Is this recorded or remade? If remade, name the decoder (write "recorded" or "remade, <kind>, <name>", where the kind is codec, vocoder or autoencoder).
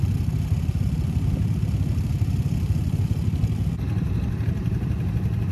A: recorded